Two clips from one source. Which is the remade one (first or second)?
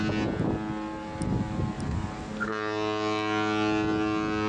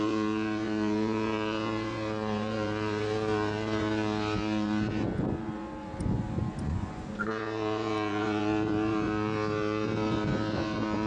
second